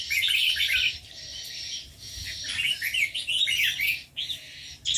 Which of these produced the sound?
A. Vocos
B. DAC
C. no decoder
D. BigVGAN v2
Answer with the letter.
C